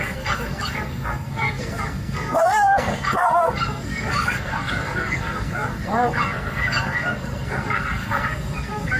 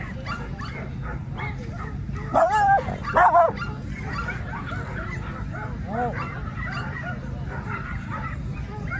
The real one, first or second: second